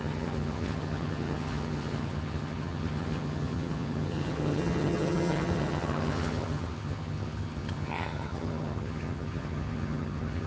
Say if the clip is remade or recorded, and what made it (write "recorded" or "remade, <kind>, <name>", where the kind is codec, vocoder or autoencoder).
remade, vocoder, HiFi-GAN